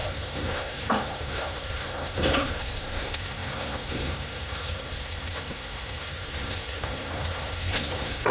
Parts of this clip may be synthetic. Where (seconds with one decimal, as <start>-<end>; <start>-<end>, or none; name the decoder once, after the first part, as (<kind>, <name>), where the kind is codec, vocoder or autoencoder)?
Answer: 0.0-8.3 (codec, SNAC)